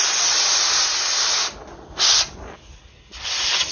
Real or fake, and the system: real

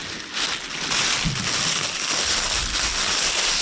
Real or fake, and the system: real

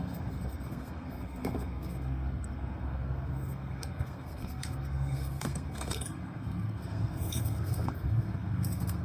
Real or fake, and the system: fake, codec, SNAC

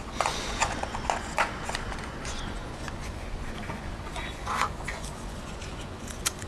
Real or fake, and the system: fake, vocoder, Vocos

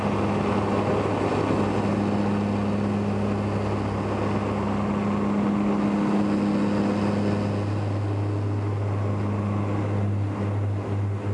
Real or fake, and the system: real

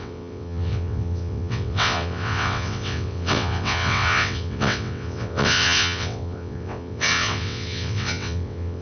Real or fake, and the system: fake, vocoder, WaveNeXt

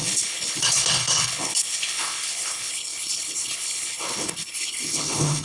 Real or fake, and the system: fake, codec, HILCodec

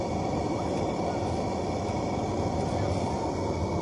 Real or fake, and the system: real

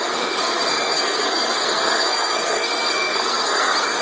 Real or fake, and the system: fake, codec, SNAC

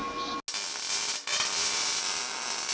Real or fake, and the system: real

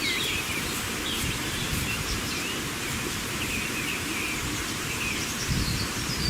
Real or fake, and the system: fake, vocoder, BigVGAN v2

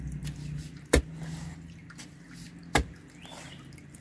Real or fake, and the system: fake, vocoder, BigVGAN v2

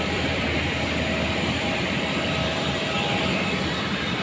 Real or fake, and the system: fake, vocoder, BigVGAN v2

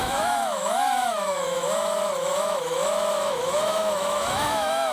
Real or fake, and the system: fake, autoencoder, DAC-VAE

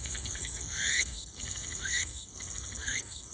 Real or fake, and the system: fake, codec, SNAC